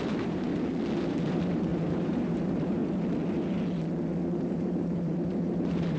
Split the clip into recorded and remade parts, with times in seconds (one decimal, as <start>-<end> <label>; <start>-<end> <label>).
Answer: 0.0-0.5 remade; 0.5-1.1 recorded; 1.1-2.8 remade; 2.8-4.4 recorded; 4.4-6.0 remade